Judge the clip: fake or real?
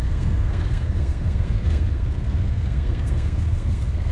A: fake